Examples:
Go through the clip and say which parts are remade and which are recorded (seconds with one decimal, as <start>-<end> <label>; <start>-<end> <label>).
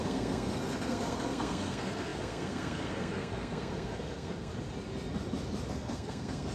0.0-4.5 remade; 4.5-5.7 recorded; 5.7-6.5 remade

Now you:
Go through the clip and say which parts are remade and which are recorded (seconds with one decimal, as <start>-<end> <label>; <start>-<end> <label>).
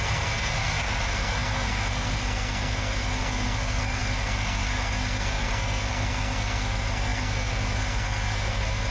0.0-8.9 remade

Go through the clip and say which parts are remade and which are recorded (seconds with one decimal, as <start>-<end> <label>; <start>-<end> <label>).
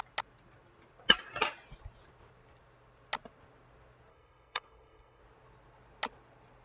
0.0-4.1 recorded; 4.1-5.2 remade; 5.2-6.6 recorded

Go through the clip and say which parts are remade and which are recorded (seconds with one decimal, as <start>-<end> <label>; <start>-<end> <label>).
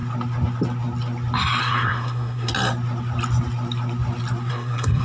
0.0-1.6 recorded; 1.6-2.5 remade; 2.5-4.5 recorded; 4.5-5.0 remade